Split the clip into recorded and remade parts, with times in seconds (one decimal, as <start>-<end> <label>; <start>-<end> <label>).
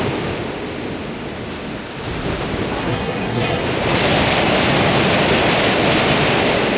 0.0-2.8 recorded; 2.8-3.6 remade; 3.6-6.8 recorded